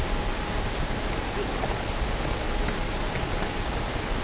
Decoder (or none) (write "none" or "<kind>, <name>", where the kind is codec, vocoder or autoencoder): none